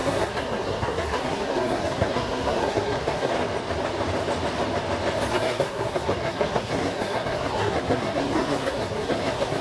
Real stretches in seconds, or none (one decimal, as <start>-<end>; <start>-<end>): 3.3-5.3